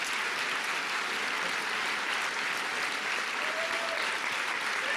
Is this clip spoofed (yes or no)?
no